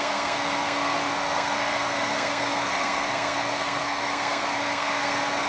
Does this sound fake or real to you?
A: fake